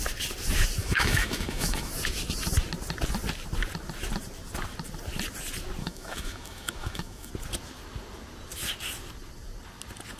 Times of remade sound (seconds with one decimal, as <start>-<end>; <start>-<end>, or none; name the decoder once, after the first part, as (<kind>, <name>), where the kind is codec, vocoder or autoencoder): 0.8-1.9 (autoencoder, DAC-VAE); 5.8-7.3